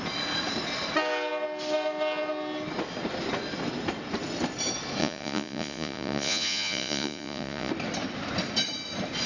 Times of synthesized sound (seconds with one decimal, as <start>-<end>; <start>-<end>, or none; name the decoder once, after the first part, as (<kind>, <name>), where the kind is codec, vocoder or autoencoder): 5.0-7.7 (vocoder, Vocos)